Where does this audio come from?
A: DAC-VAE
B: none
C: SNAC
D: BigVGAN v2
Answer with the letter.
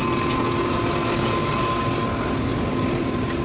B